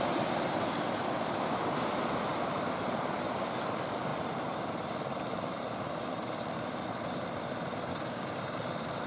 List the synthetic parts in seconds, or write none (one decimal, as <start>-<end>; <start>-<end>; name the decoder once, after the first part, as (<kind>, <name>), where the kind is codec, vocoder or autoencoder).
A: 7.9-8.4 (codec, DAC)